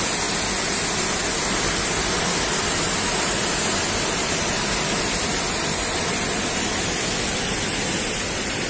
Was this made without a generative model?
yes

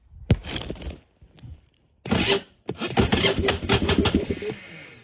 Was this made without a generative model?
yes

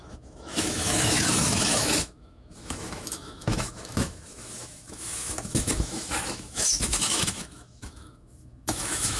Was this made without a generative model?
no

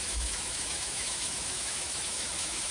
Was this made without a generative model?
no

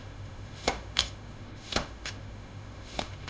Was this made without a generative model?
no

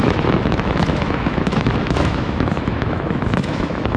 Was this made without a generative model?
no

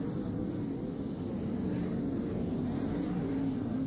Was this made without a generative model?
yes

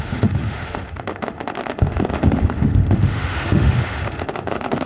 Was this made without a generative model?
no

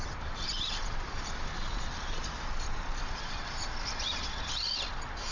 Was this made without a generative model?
yes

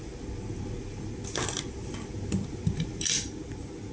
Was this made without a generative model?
yes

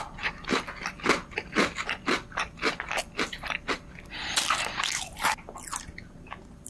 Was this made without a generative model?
yes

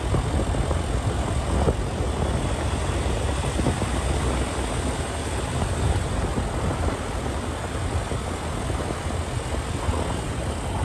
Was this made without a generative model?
yes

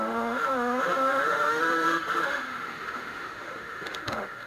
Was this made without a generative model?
no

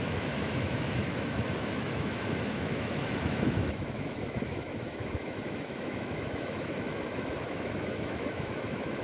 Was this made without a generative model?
no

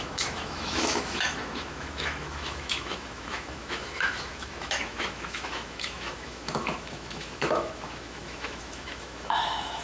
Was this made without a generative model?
no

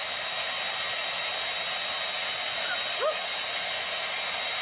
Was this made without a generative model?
yes